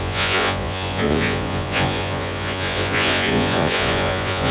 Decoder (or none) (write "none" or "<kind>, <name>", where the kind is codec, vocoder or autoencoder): vocoder, Vocos